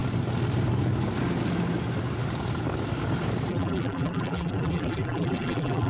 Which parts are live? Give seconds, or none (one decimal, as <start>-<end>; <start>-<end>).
0.0-3.5